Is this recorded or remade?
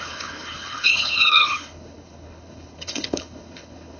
remade